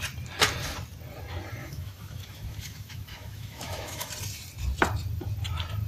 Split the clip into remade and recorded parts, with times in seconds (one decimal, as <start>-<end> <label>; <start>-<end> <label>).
0.0-1.6 recorded; 1.6-4.1 remade; 4.1-5.9 recorded